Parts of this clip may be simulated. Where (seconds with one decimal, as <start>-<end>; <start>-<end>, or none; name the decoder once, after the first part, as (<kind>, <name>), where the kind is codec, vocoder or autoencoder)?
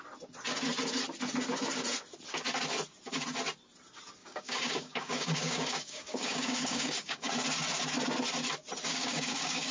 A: 4.2-7.3 (codec, DAC); 8.9-9.7